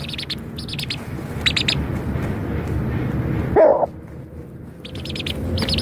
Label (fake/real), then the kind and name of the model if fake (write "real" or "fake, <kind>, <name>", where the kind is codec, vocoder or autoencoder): real